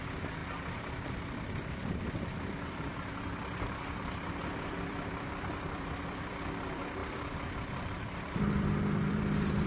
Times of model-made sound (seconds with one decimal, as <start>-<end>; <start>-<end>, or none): 0.0-9.7